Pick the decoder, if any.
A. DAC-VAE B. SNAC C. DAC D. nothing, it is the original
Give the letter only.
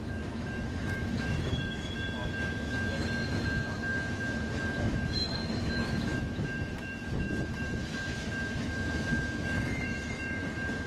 A